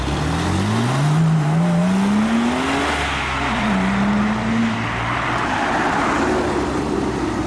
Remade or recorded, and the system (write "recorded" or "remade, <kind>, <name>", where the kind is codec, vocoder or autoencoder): recorded